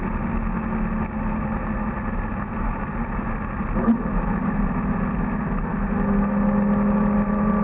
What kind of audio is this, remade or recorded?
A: recorded